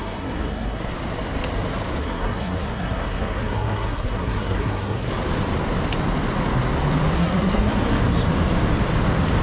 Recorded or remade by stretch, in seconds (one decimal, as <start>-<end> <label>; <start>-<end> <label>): 0.0-0.9 remade; 0.9-2.0 recorded; 2.0-5.1 remade; 5.1-7.2 recorded; 7.2-7.7 remade; 7.7-9.4 recorded